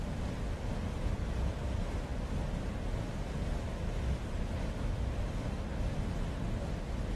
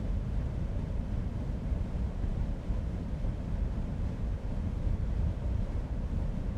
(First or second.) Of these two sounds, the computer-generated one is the second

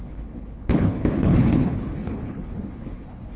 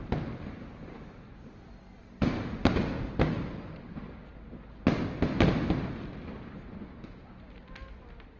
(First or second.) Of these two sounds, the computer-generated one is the first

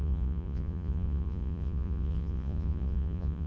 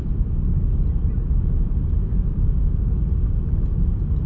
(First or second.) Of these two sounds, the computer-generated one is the first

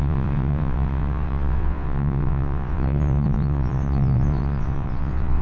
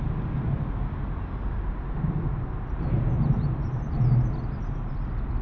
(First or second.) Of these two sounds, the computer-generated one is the first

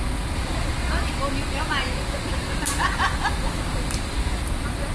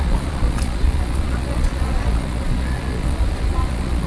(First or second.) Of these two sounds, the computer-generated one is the second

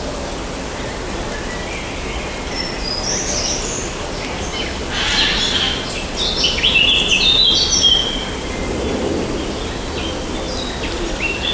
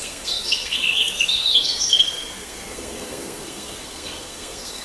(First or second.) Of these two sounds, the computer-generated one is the second